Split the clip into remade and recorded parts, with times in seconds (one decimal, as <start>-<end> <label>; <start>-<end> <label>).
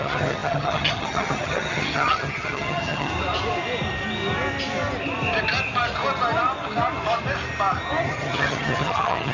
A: 0.0-3.1 remade; 3.1-8.0 recorded; 8.0-9.3 remade